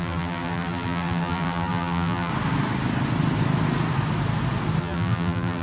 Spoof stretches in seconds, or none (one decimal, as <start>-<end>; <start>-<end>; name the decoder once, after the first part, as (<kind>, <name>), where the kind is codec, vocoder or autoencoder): 0.0-2.3 (vocoder, BigVGAN v2); 4.8-5.6